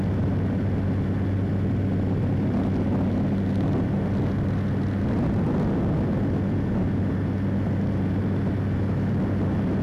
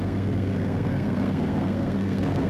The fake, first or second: second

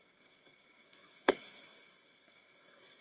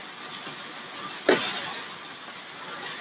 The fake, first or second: first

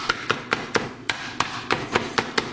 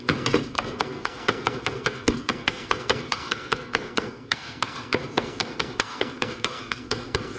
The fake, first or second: second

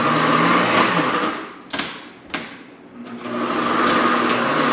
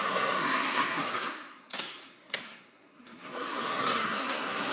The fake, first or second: second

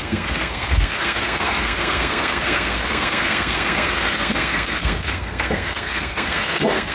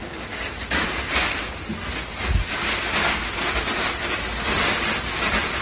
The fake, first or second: first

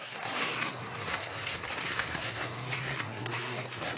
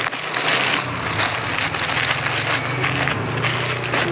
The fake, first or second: first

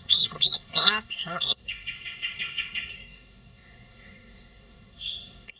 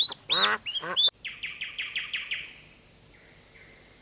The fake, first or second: first